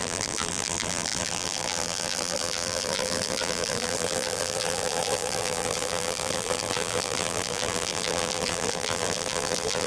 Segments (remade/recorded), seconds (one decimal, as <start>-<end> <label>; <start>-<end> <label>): 0.0-9.9 remade

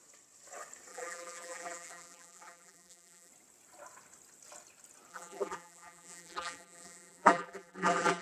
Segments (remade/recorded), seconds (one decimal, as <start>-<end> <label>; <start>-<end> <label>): 0.0-0.9 recorded; 0.9-3.3 remade; 3.3-5.1 recorded; 5.1-8.2 remade

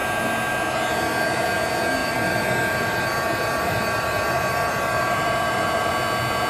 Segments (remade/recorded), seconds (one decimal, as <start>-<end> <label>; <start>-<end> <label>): 0.0-2.0 recorded; 2.0-5.9 remade; 5.9-6.5 recorded

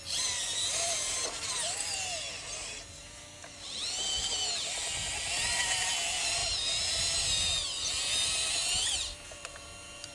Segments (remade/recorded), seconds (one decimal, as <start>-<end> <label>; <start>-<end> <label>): 0.0-10.1 recorded

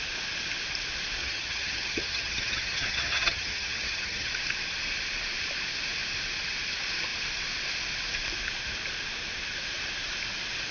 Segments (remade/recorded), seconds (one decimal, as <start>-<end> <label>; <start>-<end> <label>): 0.0-1.2 recorded; 1.2-4.3 remade; 4.3-10.7 recorded

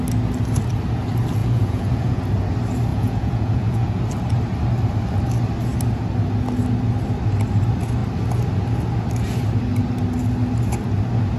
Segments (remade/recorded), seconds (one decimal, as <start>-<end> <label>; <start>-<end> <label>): 0.0-1.4 recorded; 1.4-2.2 remade; 2.2-2.9 recorded; 2.9-4.0 remade; 4.0-11.4 recorded

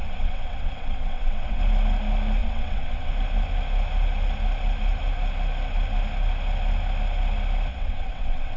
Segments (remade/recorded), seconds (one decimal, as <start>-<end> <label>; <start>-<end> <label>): 0.0-1.6 remade; 1.6-2.4 recorded; 2.4-3.1 remade; 3.1-7.7 recorded; 7.7-8.6 remade